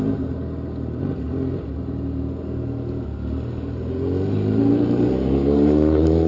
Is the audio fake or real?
real